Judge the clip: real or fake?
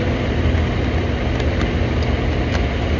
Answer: real